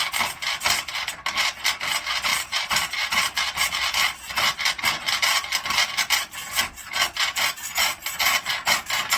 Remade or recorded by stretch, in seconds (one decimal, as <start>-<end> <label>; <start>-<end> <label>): 0.0-2.3 recorded; 2.3-3.6 remade; 3.6-9.2 recorded